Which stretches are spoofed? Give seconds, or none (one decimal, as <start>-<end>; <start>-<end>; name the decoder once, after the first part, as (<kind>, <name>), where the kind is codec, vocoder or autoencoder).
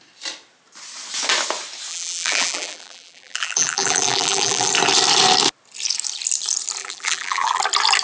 1.9-4.7 (vocoder, BigVGAN v2); 6.8-7.6